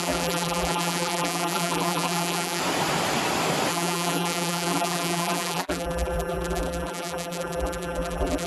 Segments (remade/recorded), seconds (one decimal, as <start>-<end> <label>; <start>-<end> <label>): 0.0-2.6 remade; 2.6-3.7 recorded; 3.7-8.5 remade

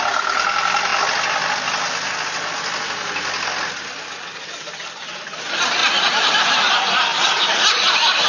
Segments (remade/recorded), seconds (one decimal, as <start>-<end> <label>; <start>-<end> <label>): 0.0-0.9 remade; 0.9-4.4 recorded; 4.4-8.3 remade